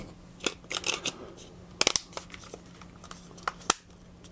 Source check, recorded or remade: recorded